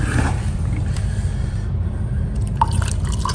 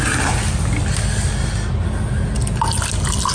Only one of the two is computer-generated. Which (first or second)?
first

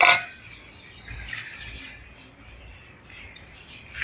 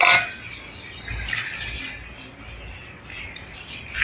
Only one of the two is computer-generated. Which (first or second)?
first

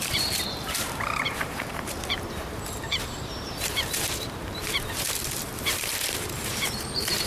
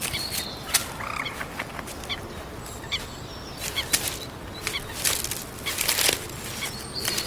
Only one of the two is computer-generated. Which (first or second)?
first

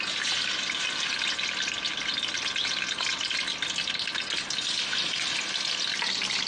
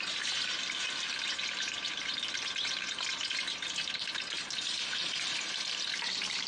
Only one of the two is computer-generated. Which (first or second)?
second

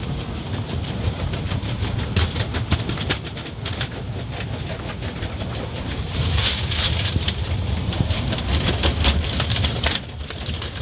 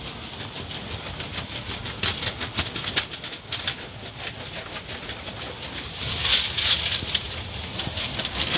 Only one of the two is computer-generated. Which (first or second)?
first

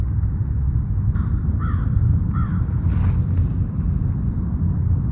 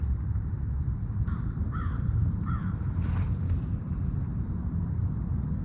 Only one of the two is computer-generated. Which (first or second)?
second